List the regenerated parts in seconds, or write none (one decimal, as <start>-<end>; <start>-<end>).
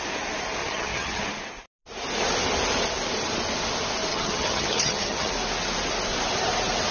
0.6-1.2; 4.1-5.3